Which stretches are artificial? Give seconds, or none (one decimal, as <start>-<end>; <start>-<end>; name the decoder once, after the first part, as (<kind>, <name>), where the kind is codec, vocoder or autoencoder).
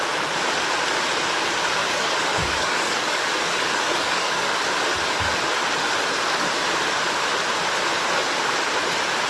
1.8-4.5 (codec, DAC)